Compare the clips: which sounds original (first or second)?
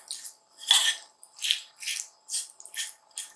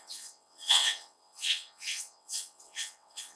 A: first